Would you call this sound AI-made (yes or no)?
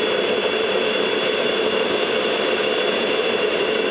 no